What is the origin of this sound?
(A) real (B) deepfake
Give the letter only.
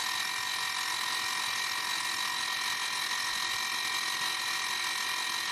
A